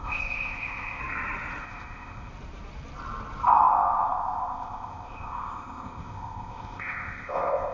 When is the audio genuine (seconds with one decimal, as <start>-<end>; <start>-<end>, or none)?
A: 1.0-1.6; 2.3-3.5